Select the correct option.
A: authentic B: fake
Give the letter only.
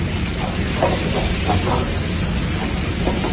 A